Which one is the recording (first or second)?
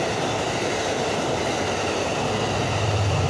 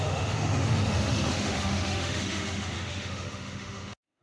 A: first